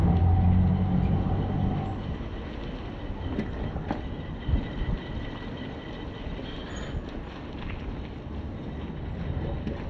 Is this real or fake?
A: real